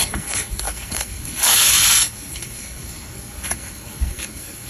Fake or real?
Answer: fake